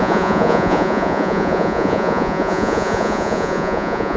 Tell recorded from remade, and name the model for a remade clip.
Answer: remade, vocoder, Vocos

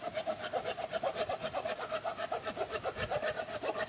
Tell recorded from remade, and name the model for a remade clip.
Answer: recorded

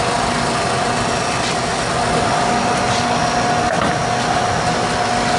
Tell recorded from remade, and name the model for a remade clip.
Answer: recorded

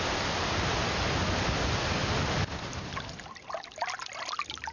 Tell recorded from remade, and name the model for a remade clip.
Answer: recorded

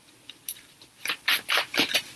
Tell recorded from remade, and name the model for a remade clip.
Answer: recorded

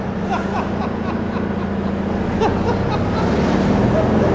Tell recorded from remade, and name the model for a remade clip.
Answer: recorded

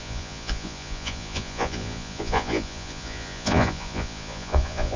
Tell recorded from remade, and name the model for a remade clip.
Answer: remade, vocoder, Vocos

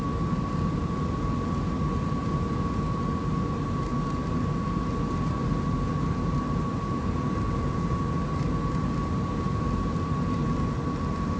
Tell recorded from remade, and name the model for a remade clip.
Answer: recorded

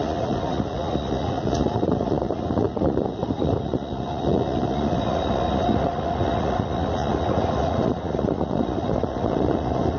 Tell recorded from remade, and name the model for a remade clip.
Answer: remade, vocoder, Vocos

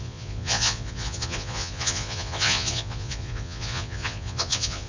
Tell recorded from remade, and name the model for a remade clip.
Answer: remade, vocoder, Vocos